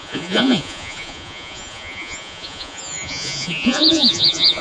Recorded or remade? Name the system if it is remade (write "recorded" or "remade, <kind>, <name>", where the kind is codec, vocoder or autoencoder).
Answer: remade, vocoder, Vocos